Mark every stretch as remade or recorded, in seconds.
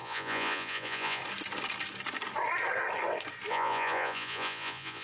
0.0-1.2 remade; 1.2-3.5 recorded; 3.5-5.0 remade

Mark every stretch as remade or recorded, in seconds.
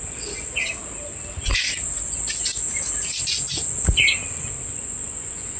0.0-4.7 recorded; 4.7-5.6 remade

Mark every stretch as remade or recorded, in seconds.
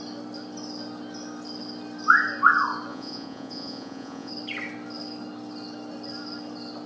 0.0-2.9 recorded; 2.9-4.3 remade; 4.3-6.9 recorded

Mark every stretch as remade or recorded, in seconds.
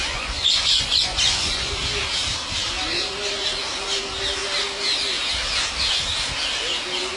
0.0-1.8 remade; 1.8-7.2 recorded